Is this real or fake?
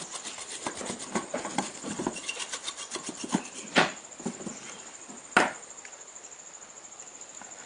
real